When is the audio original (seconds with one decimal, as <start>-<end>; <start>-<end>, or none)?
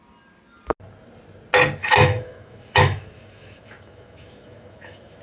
0.0-1.8